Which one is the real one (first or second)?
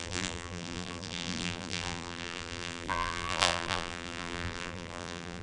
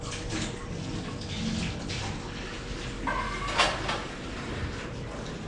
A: second